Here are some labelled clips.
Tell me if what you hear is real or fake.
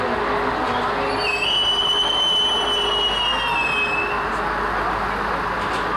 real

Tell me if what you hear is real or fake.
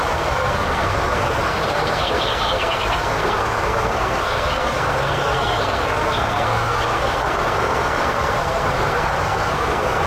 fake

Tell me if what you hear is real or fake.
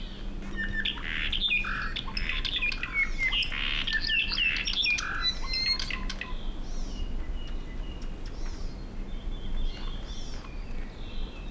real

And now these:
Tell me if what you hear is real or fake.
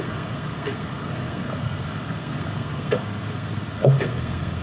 fake